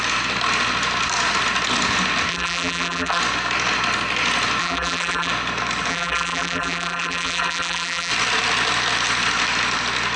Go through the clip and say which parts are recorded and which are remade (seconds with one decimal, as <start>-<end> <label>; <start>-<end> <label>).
0.0-2.3 recorded; 2.3-3.2 remade; 3.2-4.6 recorded; 4.6-5.3 remade; 5.3-5.9 recorded; 5.9-8.1 remade; 8.1-10.2 recorded